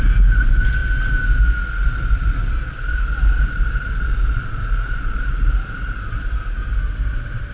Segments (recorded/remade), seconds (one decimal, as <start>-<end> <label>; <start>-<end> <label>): 0.0-7.5 recorded

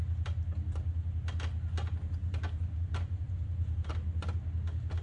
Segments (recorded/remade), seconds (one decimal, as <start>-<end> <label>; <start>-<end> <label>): 0.0-2.2 recorded; 2.2-3.9 remade; 3.9-5.0 recorded

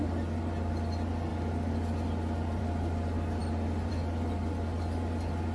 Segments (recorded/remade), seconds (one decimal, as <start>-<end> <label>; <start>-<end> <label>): 0.0-5.5 recorded

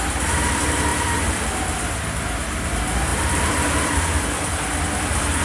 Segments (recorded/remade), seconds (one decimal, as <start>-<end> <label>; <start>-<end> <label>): 0.0-3.1 recorded; 3.1-4.5 remade; 4.5-5.4 recorded

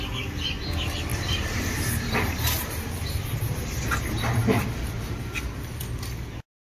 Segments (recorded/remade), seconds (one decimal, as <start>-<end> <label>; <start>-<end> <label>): 0.0-1.1 recorded; 1.1-4.9 remade; 4.9-6.8 recorded

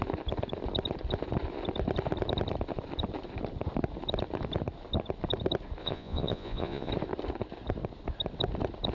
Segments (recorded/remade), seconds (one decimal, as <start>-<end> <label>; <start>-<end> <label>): 0.0-5.8 recorded; 5.8-6.9 remade; 6.9-8.9 recorded

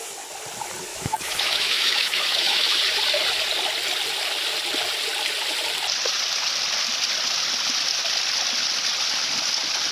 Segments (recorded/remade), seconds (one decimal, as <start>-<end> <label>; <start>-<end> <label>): 0.0-0.9 recorded; 0.9-2.8 remade; 2.8-9.9 recorded

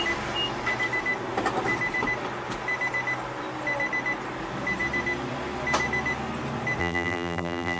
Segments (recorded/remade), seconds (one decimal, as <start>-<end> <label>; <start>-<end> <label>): 0.0-6.8 recorded; 6.8-7.8 remade